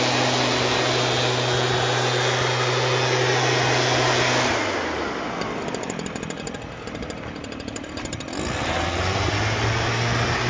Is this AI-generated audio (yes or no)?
no